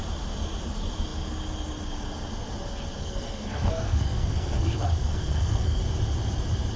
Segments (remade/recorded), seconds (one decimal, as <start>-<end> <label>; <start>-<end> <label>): 0.0-3.0 recorded; 3.0-5.8 remade; 5.8-6.8 recorded